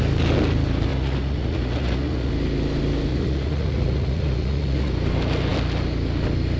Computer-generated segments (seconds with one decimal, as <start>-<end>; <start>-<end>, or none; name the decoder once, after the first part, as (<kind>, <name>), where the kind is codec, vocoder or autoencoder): 0.9-2.3 (vocoder, Vocos); 3.1-4.9